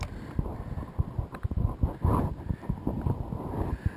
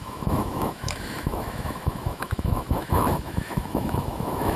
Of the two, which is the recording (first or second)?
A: first